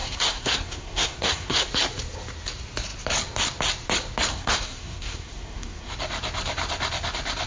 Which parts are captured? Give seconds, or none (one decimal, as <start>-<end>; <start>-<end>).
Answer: 1.7-4.3; 5.9-7.5